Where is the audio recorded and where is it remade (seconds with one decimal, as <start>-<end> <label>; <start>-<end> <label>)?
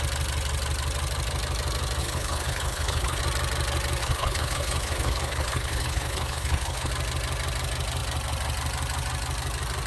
0.0-2.0 recorded; 2.0-3.2 remade; 3.2-4.0 recorded; 4.0-6.9 remade; 6.9-9.9 recorded